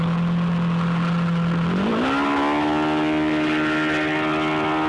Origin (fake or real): real